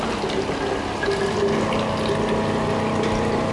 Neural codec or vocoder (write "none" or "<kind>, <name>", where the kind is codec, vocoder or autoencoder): none